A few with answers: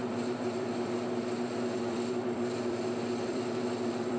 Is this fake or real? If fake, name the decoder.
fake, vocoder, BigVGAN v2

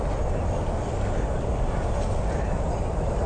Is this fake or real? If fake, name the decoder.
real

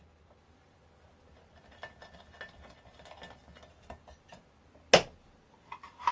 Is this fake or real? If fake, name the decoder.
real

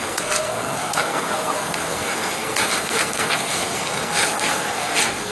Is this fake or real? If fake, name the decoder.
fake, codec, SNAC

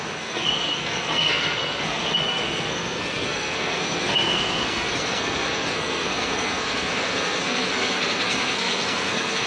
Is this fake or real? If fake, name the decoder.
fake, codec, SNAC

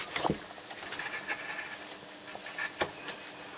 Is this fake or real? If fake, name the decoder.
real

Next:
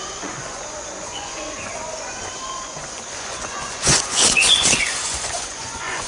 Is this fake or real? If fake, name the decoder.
fake, vocoder, Vocos